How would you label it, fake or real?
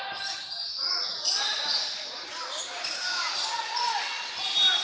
real